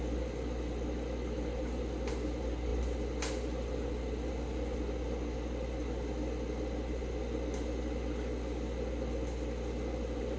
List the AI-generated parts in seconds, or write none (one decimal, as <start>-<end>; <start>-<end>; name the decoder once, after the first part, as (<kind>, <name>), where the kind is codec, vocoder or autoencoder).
none